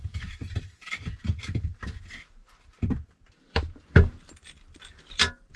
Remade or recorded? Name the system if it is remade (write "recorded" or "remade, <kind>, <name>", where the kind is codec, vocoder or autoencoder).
recorded